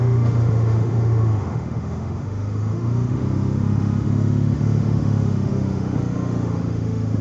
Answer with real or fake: fake